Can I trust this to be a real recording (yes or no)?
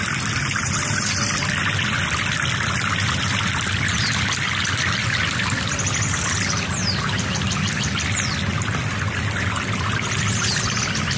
yes